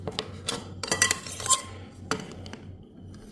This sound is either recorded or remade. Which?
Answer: recorded